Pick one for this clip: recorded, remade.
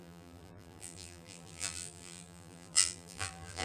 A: remade